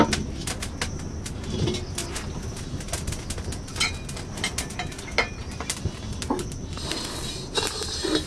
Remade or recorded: recorded